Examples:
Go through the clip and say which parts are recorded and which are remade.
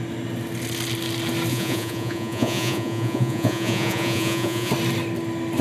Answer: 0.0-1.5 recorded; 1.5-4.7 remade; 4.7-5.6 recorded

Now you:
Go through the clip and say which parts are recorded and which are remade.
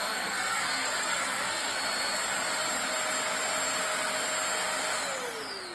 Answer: 0.0-1.8 remade; 1.8-5.7 recorded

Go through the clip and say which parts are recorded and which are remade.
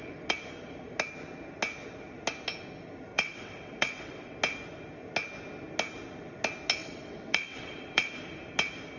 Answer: 0.0-3.1 recorded; 3.1-4.3 remade; 4.3-6.8 recorded; 6.8-8.1 remade; 8.1-9.0 recorded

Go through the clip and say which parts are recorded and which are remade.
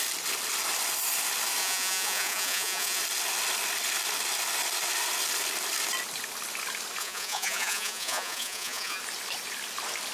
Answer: 0.0-1.6 recorded; 1.6-3.0 remade; 3.0-7.0 recorded; 7.0-9.0 remade; 9.0-10.1 recorded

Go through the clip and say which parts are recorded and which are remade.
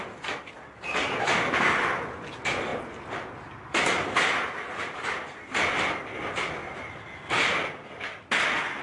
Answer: 0.0-8.8 recorded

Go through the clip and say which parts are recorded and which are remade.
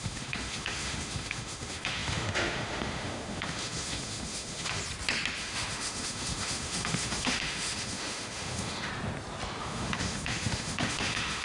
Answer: 0.0-4.8 remade; 4.8-5.4 recorded; 5.4-8.9 remade; 8.9-9.6 recorded; 9.6-11.4 remade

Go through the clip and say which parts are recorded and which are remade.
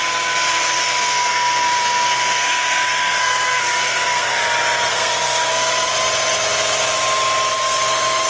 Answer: 0.0-0.5 recorded; 0.5-4.4 remade; 4.4-4.9 recorded; 4.9-5.9 remade; 5.9-7.5 recorded; 7.5-8.3 remade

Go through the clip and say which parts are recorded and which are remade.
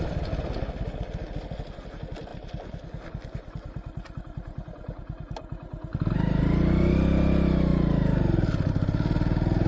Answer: 0.0-9.7 recorded